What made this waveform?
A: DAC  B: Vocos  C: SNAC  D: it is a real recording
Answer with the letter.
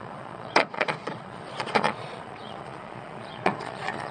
B